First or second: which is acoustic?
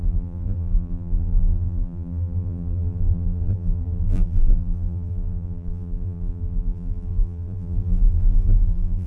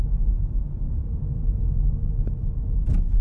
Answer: second